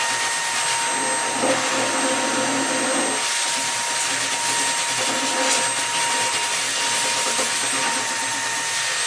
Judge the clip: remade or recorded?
recorded